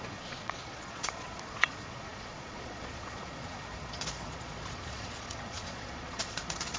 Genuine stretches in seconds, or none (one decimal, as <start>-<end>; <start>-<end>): none